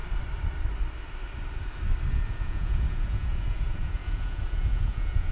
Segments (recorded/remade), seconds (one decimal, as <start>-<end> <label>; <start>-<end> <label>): 0.0-2.1 recorded; 2.1-5.3 remade